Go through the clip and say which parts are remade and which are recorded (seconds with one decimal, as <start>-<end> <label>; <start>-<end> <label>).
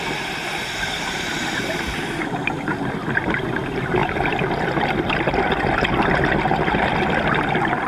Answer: 0.0-7.9 recorded